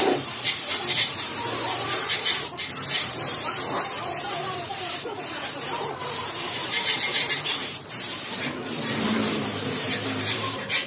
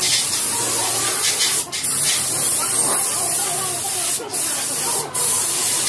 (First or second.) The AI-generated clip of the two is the first